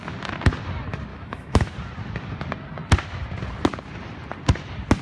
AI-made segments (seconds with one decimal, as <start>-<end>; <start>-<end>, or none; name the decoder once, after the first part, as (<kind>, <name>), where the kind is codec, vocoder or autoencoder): 1.1-1.7 (autoencoder, DAC-VAE)